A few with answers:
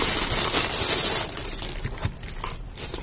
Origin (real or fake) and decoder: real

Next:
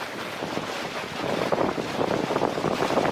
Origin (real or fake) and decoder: real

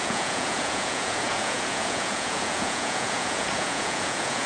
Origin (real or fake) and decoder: fake, vocoder, Vocos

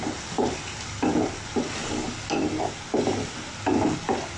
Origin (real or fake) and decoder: real